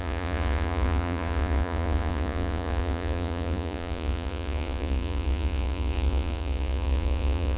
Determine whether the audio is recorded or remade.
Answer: remade